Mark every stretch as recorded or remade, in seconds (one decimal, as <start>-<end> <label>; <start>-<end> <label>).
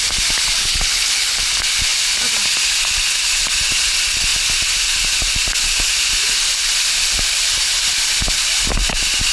0.0-0.6 recorded; 0.6-1.4 remade; 1.4-9.3 recorded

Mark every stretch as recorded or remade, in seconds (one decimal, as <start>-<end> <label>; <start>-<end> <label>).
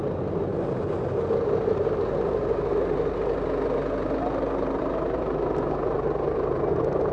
0.0-7.1 recorded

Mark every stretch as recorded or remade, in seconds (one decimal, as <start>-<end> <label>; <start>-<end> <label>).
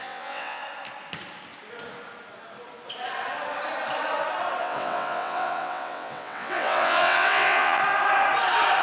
0.0-0.6 remade; 0.6-4.6 recorded; 4.6-7.8 remade; 7.8-8.8 recorded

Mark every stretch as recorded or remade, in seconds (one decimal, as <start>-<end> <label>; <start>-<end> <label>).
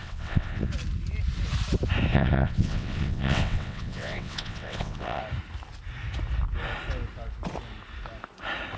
0.0-0.7 remade; 0.7-2.1 recorded; 2.1-5.2 remade; 5.2-8.8 recorded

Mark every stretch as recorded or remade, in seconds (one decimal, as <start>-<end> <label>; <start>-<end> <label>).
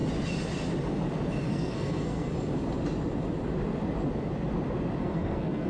0.0-1.5 recorded; 1.5-2.3 remade; 2.3-5.0 recorded; 5.0-5.7 remade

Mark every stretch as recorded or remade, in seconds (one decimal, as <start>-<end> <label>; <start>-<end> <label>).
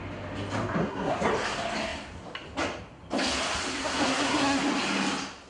0.0-0.8 recorded; 0.8-1.3 remade; 1.3-3.8 recorded; 3.8-4.6 remade; 4.6-5.5 recorded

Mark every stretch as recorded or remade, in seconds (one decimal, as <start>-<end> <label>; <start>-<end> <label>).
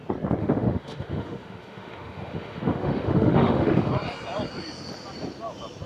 0.0-0.4 recorded; 0.4-3.9 remade; 3.9-5.9 recorded